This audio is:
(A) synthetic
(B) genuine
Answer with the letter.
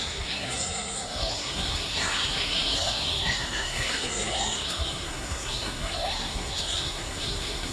A